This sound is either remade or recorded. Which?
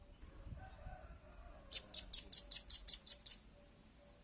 recorded